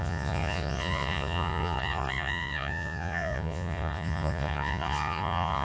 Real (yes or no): no